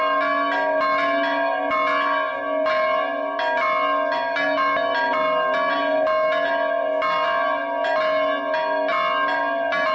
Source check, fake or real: real